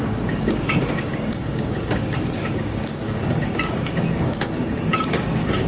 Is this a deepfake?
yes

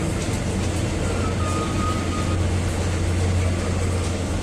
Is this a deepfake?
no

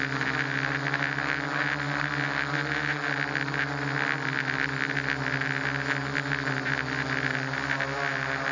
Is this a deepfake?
no